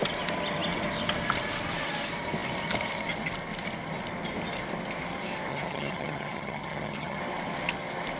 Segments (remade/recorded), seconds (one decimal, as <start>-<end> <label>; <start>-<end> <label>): 0.0-5.5 recorded; 5.5-7.2 remade; 7.2-8.2 recorded